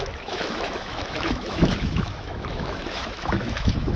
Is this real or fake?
fake